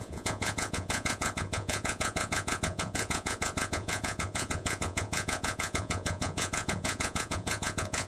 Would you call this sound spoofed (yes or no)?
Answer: yes